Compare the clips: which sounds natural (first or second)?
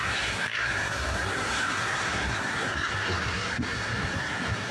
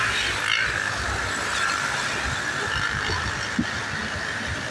second